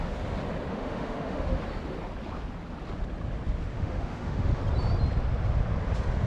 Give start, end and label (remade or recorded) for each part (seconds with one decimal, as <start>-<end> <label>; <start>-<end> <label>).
0.0-0.7 recorded; 0.7-1.6 remade; 1.6-3.7 recorded; 3.7-4.6 remade; 4.6-6.3 recorded